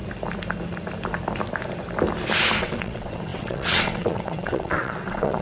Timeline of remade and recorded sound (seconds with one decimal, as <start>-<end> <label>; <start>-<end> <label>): 0.0-2.6 recorded; 2.6-5.4 remade